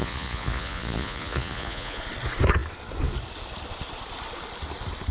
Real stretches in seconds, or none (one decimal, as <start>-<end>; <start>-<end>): 2.0-5.1

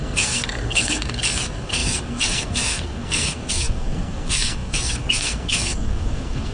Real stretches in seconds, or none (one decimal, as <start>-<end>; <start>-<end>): none